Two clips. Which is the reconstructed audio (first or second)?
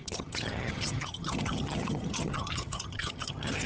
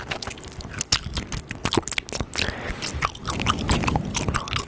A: first